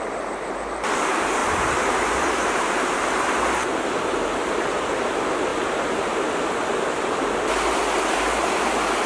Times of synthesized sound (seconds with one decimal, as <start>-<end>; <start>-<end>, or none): 1.4-3.3; 5.5-6.4